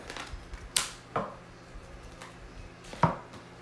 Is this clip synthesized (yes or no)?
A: no